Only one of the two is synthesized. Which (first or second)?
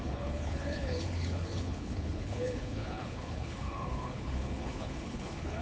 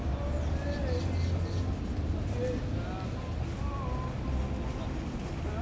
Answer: first